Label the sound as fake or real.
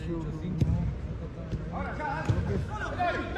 real